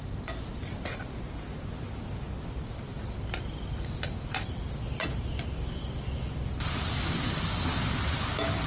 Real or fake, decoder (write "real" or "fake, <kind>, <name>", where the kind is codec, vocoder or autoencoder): real